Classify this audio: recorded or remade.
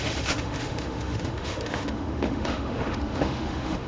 remade